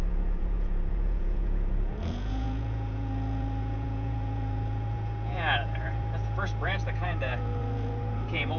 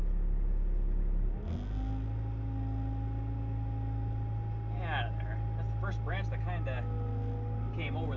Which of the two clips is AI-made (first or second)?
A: first